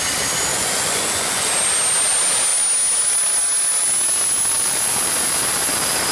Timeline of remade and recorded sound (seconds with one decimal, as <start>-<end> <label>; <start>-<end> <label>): 0.0-0.5 recorded; 0.5-1.5 remade; 1.5-6.1 recorded